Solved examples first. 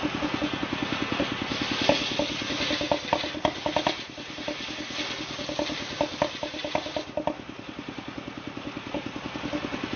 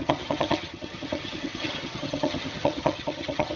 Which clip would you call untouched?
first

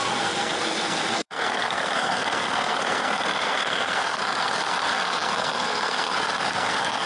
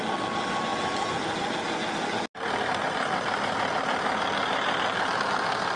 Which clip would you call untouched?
second